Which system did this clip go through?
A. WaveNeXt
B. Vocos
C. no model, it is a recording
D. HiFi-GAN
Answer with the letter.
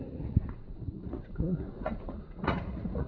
B